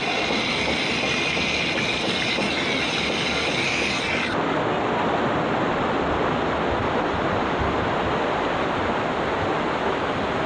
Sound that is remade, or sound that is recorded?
recorded